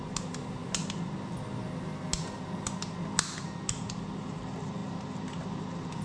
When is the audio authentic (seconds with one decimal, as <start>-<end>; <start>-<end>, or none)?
0.0-6.0

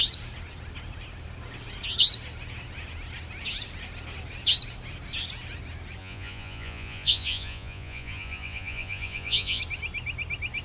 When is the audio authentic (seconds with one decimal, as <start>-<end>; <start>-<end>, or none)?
0.0-6.0; 9.6-10.6

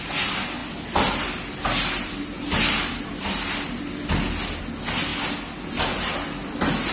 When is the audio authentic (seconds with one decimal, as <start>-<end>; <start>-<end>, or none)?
0.0-6.9

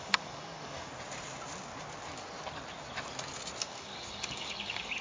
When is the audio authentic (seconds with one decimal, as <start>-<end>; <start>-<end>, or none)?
0.9-3.6

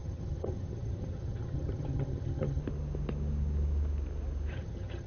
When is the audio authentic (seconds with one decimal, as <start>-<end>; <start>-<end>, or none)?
2.6-4.5

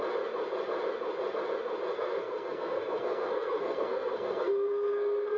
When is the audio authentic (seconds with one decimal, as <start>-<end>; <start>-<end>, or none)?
0.0-1.9

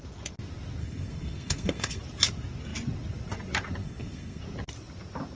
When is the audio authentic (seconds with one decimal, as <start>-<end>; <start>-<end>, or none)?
0.0-0.8; 2.0-3.8; 4.4-5.3

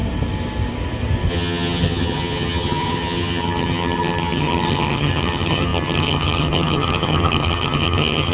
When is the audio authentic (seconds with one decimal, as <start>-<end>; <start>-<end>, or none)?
0.0-1.3